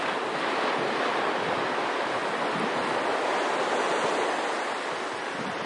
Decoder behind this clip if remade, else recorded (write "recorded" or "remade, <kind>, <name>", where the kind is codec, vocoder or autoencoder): recorded